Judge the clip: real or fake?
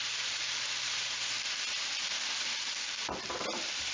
fake